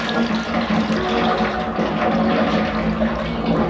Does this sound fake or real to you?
real